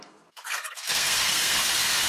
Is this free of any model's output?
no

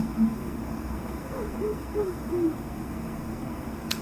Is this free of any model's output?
no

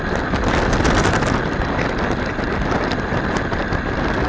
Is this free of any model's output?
yes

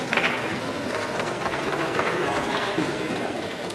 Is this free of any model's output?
no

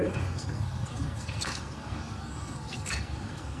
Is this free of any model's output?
no